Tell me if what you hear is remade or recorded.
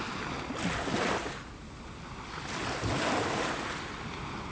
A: recorded